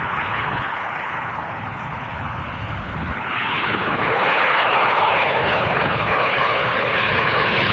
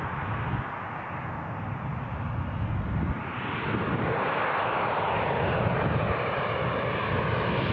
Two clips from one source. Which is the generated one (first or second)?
first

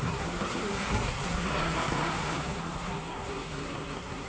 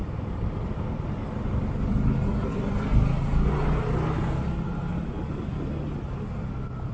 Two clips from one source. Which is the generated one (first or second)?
first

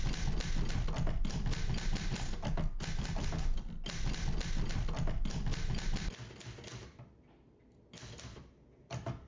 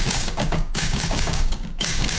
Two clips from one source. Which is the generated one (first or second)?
second